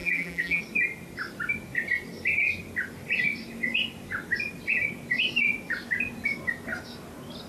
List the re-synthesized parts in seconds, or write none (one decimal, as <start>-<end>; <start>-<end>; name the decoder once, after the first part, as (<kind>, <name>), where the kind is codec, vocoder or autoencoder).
0.0-0.6 (vocoder, BigVGAN v2)

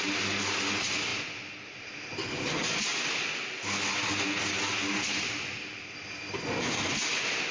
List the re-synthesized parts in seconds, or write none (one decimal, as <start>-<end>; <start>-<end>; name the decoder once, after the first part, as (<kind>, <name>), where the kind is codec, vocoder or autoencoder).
none

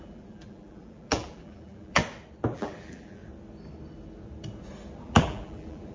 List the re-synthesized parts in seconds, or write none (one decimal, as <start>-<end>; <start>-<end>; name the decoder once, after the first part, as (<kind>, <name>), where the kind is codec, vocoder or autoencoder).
0.0-2.0 (vocoder, BigVGAN v2); 2.5-3.2; 5.0-5.9

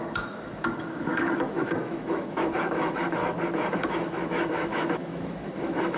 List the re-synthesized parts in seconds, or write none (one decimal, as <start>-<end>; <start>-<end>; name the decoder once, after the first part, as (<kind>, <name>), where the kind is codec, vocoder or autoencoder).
0.0-3.2 (autoencoder, DAC-VAE); 3.7-6.0

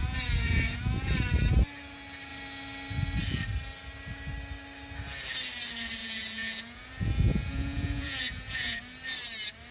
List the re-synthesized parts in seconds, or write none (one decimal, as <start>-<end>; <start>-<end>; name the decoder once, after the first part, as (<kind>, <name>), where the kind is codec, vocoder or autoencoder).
0.0-1.1 (vocoder, Vocos); 6.0-8.8